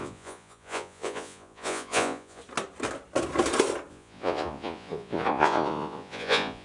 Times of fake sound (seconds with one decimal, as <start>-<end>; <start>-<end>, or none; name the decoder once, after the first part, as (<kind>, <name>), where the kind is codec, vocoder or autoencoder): 0.0-2.4 (vocoder, Vocos); 3.9-6.6